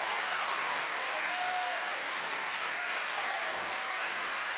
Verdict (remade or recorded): remade